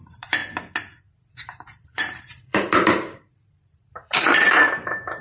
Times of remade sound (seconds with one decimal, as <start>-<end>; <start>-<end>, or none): 0.0-0.4; 1.3-5.2